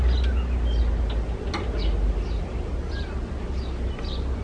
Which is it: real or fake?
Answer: real